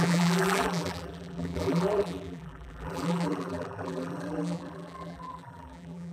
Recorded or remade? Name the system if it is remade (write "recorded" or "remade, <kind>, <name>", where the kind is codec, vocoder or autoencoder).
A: remade, vocoder, BigVGAN v2